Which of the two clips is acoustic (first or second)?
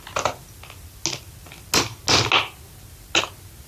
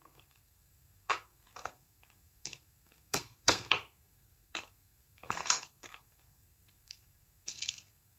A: first